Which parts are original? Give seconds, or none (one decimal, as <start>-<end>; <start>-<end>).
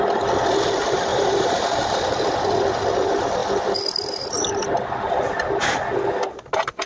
0.0-1.1; 2.4-6.9